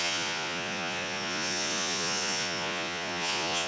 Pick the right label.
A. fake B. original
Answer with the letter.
A